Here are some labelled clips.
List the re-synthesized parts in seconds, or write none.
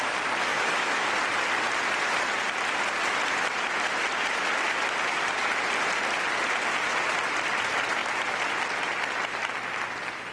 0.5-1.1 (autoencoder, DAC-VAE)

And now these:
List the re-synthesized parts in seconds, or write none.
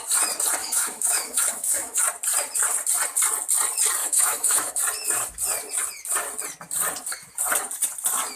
0.6-2.0 (autoencoder, DAC-VAE); 4.0-4.8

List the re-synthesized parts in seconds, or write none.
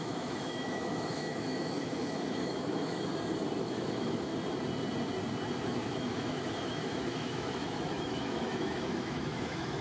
0.0-3.1 (autoencoder, DAC-VAE); 3.6-4.3; 5.6-9.8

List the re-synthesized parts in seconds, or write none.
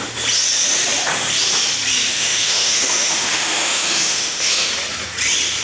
2.1-4.7 (autoencoder, DAC-VAE)